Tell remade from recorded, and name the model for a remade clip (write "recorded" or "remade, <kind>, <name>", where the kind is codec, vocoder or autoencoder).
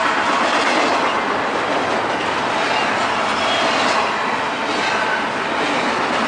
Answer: recorded